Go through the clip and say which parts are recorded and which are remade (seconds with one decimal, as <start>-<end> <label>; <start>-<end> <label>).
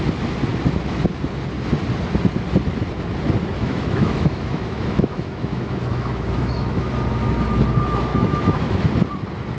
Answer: 0.0-3.6 recorded; 3.6-6.9 remade; 6.9-8.1 recorded; 8.1-8.9 remade; 8.9-9.6 recorded